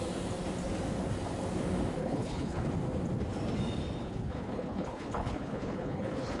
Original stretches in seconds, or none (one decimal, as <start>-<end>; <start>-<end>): 0.0-2.0; 2.7-4.0